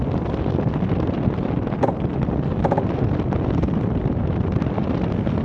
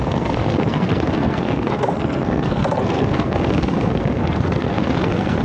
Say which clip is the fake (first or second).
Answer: second